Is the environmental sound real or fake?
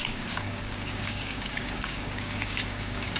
fake